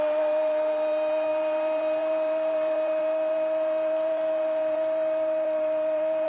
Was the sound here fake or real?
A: fake